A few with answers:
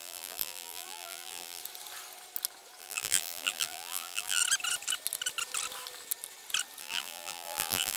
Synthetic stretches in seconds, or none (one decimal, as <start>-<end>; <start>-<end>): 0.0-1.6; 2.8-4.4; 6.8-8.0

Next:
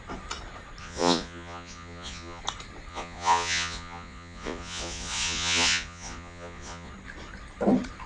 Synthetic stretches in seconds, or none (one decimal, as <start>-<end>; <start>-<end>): 0.8-2.4; 2.9-6.9

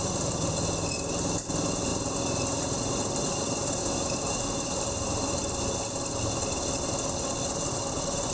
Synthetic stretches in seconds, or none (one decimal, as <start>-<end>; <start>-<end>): 0.0-0.5; 1.0-1.9; 3.0-3.8; 4.3-5.4